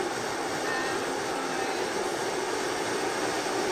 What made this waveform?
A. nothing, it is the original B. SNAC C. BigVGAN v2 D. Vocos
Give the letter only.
A